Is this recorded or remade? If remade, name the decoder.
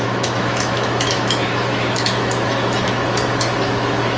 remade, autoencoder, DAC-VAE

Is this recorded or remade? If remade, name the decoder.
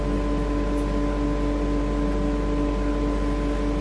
recorded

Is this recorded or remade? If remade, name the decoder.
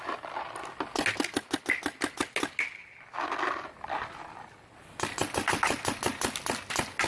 recorded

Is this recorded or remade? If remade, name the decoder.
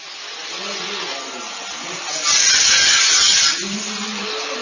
recorded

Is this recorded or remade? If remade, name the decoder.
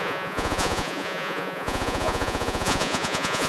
remade, vocoder, Vocos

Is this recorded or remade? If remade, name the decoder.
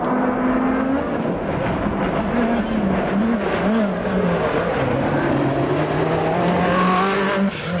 recorded